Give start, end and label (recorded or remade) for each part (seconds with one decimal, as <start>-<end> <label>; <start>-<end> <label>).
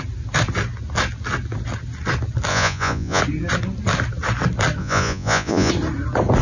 0.0-2.5 recorded; 2.5-3.2 remade; 3.2-4.8 recorded; 4.8-5.7 remade; 5.7-6.4 recorded